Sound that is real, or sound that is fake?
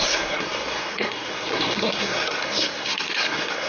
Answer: fake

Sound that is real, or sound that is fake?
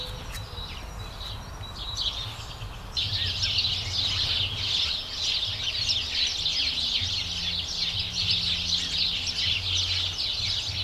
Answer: real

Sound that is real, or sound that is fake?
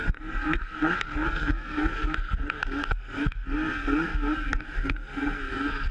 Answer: fake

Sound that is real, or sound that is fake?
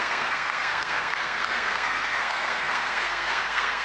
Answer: fake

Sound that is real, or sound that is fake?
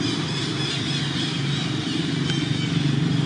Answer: real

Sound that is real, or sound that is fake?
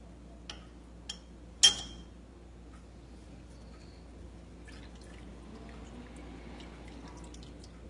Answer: real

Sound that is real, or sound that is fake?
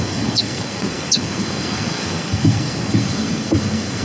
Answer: fake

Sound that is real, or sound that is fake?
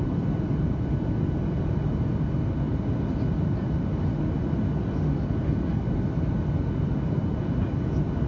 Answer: real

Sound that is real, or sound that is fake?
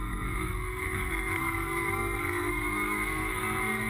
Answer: fake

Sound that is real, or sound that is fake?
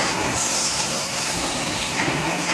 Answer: fake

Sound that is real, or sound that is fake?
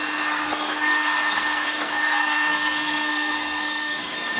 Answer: fake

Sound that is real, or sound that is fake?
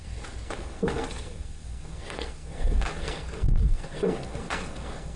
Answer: fake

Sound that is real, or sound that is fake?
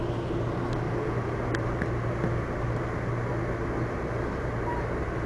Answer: real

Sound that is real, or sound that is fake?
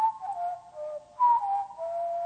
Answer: real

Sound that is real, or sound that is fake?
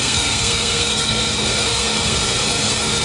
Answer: fake